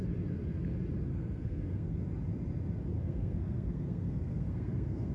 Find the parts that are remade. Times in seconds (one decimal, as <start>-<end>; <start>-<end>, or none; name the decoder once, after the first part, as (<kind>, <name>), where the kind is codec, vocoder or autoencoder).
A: 1.1-2.0 (codec, SNAC); 2.9-5.1